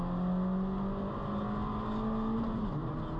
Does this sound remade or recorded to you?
recorded